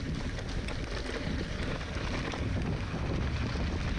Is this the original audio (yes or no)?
yes